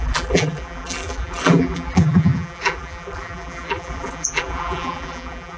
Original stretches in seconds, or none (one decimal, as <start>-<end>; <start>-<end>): none